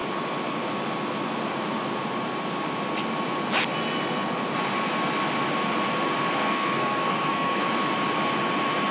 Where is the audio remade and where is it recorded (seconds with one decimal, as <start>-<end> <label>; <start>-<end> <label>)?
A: 0.0-6.4 recorded; 6.4-7.6 remade; 7.6-8.9 recorded